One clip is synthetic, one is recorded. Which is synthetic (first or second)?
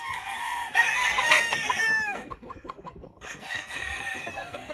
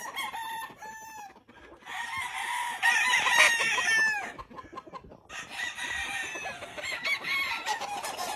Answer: first